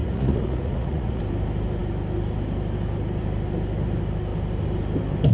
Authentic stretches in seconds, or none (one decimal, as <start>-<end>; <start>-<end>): 1.2-5.3